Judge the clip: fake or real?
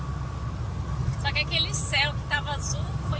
real